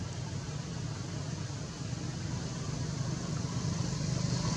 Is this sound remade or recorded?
recorded